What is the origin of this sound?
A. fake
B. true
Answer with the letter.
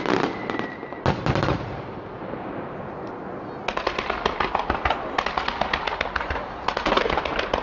B